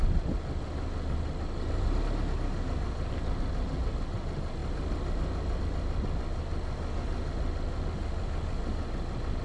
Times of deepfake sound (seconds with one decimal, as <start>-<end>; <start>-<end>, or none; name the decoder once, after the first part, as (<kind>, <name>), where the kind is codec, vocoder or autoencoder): none